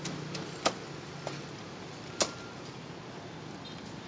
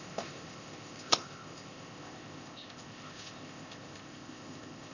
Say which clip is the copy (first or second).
second